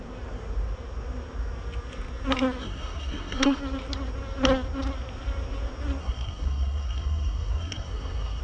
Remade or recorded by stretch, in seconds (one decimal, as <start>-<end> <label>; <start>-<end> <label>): 0.0-2.6 recorded; 2.6-3.6 remade; 3.6-6.0 recorded; 6.0-8.4 remade